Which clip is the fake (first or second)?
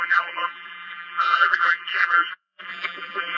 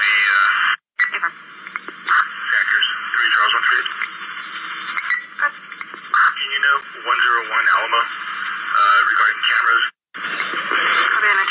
first